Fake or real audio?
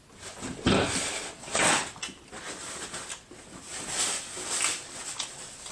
real